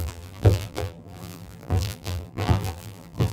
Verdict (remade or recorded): remade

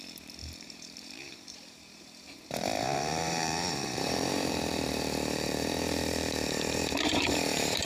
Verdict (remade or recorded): remade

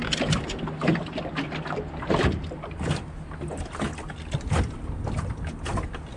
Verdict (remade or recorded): recorded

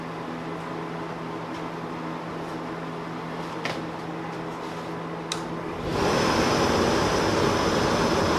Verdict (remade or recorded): recorded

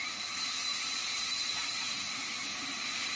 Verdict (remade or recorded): recorded